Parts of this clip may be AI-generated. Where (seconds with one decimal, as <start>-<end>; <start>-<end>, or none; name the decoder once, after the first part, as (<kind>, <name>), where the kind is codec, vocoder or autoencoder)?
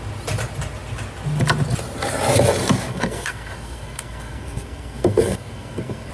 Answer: 2.9-6.1 (codec, SNAC)